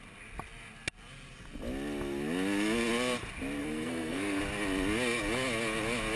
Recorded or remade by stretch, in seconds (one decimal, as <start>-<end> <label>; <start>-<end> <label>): 0.0-3.6 recorded; 3.6-4.4 remade; 4.4-6.2 recorded